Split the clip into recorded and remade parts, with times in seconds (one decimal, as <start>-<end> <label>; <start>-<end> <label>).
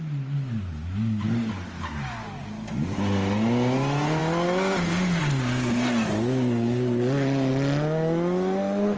0.0-9.0 recorded